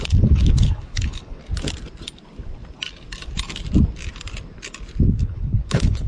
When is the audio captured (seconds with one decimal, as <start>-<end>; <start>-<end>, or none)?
1.4-5.1